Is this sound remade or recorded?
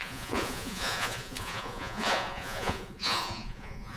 remade